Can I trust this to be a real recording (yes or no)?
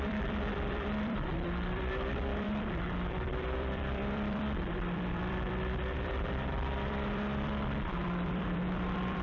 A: no